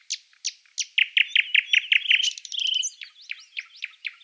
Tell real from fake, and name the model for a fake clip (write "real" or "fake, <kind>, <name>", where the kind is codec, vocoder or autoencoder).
real